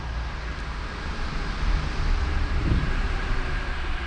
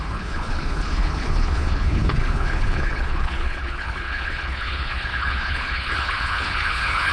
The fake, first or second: second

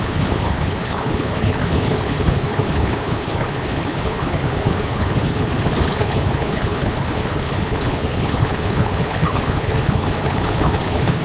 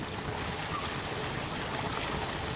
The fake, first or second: first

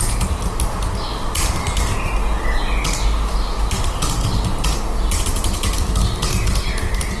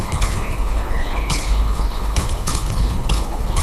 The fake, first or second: second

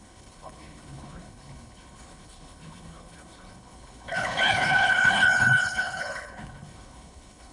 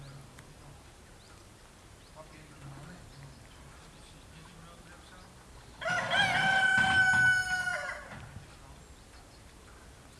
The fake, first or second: first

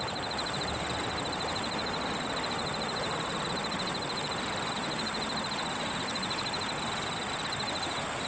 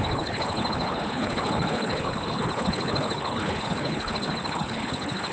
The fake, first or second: second